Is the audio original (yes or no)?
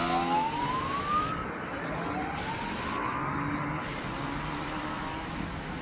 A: yes